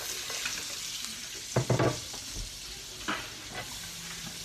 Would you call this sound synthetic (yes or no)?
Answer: no